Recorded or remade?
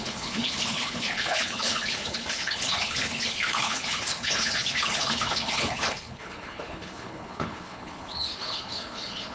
remade